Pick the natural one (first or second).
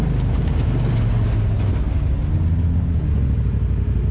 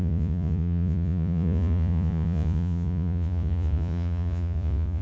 first